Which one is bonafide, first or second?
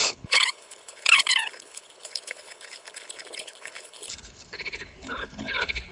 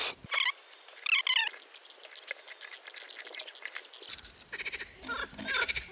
second